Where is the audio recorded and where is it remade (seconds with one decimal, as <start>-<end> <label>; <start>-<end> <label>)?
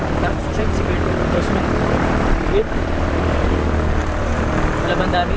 0.0-0.4 recorded; 0.4-3.5 remade; 3.5-4.0 recorded; 4.0-4.5 remade; 4.5-5.4 recorded